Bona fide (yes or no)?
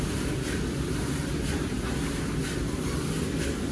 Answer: yes